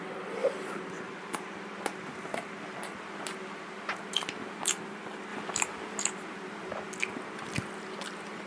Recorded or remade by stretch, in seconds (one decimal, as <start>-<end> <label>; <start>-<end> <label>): 0.0-8.5 recorded

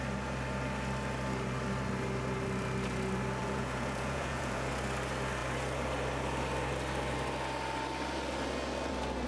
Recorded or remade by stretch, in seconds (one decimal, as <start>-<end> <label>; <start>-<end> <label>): 0.0-3.4 recorded; 3.4-4.7 remade; 4.7-9.3 recorded

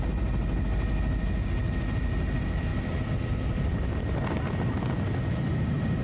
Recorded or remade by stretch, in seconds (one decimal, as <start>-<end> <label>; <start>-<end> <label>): 0.0-6.0 recorded

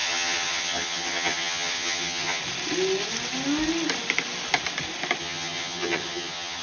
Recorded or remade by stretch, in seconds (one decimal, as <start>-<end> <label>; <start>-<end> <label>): 0.0-2.4 remade; 2.4-5.2 recorded; 5.2-6.6 remade

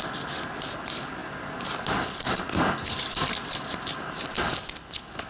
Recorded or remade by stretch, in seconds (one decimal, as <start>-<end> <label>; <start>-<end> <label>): 0.0-5.3 recorded

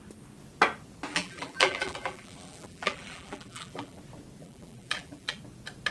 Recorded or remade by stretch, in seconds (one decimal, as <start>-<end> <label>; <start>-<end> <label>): 0.0-1.1 recorded; 1.1-4.0 remade; 4.0-4.4 recorded; 4.4-5.4 remade; 5.4-5.9 recorded

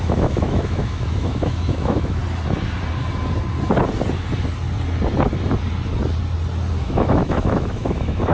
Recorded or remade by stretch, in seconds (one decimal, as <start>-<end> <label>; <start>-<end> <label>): 0.0-2.2 remade; 2.2-6.8 recorded; 6.8-8.3 remade

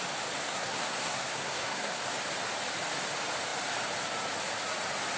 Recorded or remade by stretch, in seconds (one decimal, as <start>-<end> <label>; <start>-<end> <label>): 0.0-0.4 recorded; 0.4-2.0 remade; 2.0-5.2 recorded